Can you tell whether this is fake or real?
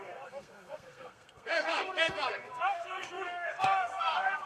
fake